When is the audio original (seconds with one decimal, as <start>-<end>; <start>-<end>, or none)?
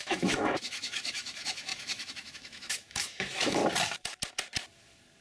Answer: 3.6-5.2